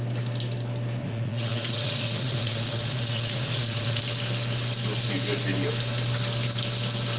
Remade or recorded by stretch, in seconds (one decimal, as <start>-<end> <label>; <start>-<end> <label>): 0.0-1.0 recorded; 1.0-4.0 remade; 4.0-7.2 recorded